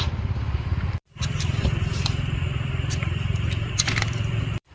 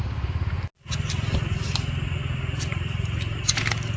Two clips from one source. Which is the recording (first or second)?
second